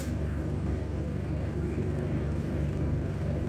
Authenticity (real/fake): fake